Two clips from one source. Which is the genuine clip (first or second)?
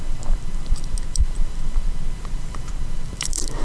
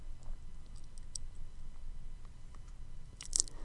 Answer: second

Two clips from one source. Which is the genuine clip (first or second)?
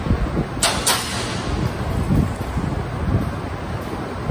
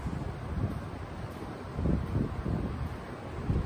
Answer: first